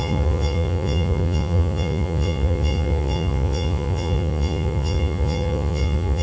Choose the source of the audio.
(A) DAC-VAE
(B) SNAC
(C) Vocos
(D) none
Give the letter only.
C